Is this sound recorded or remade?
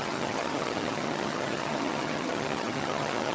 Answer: remade